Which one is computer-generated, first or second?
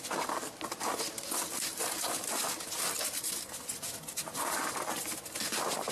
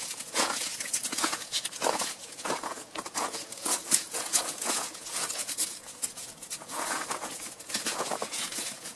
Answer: second